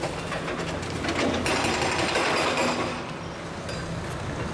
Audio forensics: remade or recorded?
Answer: recorded